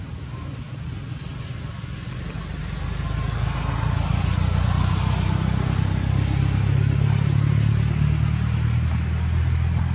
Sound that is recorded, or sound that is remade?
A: recorded